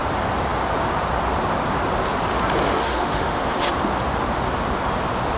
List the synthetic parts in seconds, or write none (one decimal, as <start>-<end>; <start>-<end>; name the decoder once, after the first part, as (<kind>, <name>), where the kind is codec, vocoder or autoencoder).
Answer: 2.7-3.7 (autoencoder, DAC-VAE)